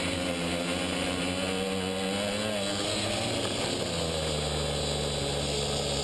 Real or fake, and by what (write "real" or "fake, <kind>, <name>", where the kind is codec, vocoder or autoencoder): real